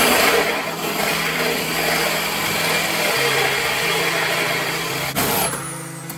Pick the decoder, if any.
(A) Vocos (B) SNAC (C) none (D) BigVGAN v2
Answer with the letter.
C